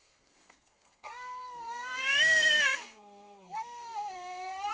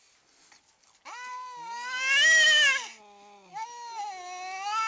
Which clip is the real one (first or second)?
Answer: second